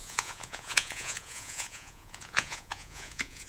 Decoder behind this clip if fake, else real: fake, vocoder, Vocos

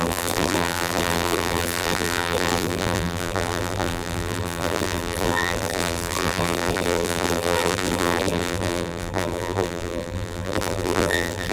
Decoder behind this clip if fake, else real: fake, vocoder, BigVGAN v2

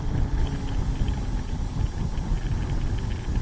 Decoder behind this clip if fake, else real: real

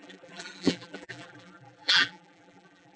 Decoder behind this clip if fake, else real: fake, vocoder, BigVGAN v2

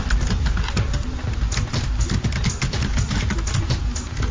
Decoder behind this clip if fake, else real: real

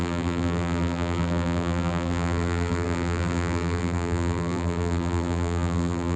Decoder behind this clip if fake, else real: fake, vocoder, BigVGAN v2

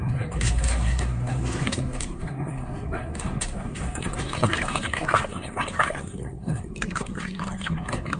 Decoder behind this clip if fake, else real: fake, codec, SNAC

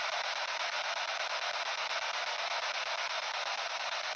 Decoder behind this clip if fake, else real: real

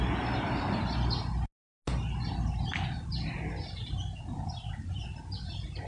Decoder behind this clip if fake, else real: real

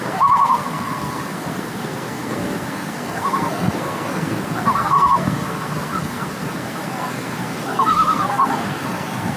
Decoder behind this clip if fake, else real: fake, codec, SNAC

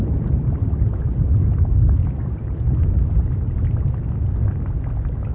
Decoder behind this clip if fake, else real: real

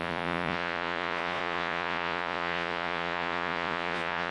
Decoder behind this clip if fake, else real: fake, vocoder, Vocos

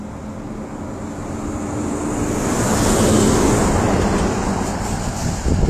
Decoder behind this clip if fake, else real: real